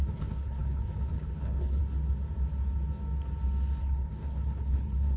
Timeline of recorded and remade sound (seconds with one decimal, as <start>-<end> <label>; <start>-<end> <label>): 0.0-1.8 remade; 1.8-3.8 recorded; 3.8-5.2 remade